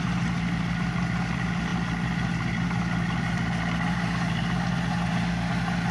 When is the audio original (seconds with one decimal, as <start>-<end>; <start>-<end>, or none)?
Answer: 0.0-5.9